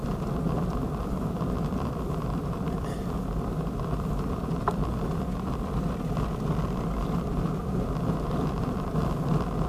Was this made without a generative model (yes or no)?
no